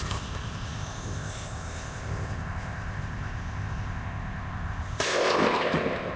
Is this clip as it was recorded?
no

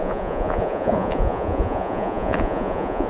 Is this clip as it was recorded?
no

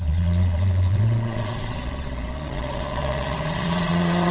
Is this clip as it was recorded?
no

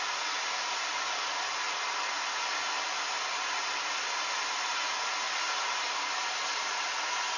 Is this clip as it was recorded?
yes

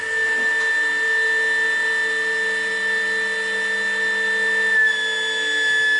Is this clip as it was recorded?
yes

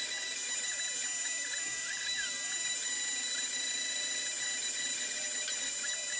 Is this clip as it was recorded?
yes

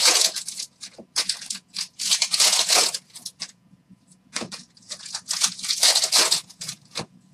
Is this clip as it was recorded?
no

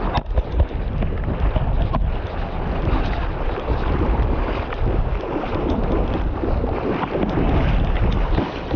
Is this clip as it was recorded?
yes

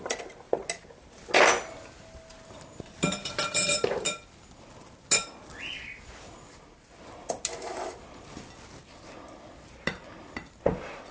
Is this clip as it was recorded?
yes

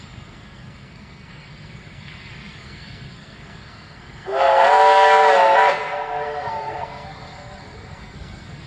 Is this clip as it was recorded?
no